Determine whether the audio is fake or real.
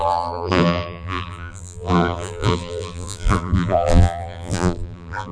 fake